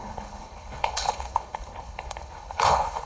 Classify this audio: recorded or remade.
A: remade